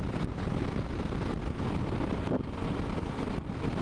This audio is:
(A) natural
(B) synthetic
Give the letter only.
A